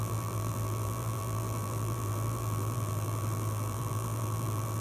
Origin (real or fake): fake